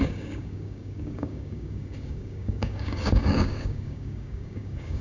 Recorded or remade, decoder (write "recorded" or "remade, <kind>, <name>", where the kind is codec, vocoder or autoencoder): remade, codec, DAC